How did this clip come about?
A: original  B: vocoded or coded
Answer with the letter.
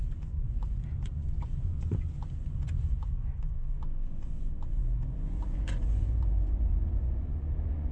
B